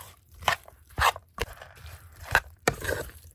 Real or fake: fake